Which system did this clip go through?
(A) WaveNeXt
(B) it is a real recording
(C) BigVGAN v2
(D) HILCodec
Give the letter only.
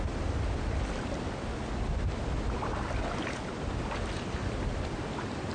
B